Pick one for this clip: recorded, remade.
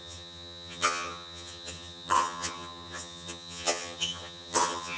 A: remade